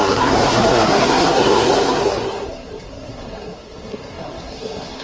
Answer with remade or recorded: remade